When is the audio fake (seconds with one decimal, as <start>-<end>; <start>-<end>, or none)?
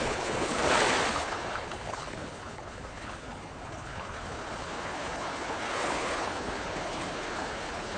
0.0-0.6; 1.1-8.0